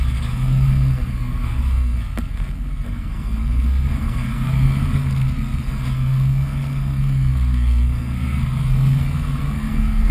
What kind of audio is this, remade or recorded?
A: remade